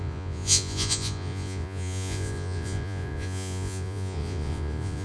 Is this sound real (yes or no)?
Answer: no